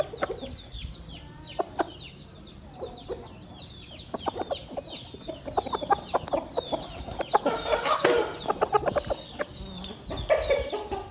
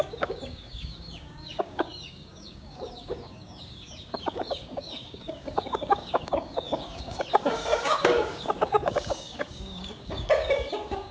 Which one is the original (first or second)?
first